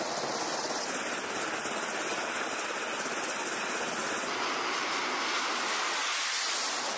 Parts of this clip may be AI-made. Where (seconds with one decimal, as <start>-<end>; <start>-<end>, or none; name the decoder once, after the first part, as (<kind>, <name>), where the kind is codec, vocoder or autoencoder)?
none